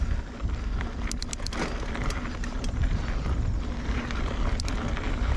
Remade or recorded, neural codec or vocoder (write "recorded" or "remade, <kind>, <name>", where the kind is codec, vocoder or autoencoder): recorded